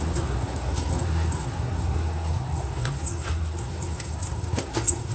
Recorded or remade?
remade